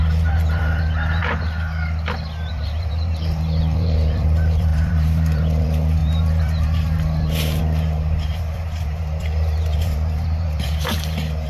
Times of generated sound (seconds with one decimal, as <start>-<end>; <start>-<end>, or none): 0.0-1.2; 2.5-11.5